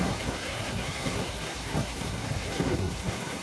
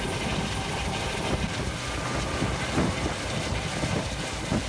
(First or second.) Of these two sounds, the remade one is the first